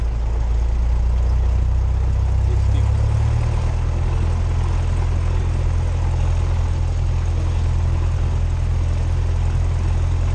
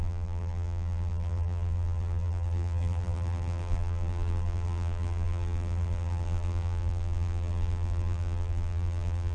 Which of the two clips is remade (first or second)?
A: second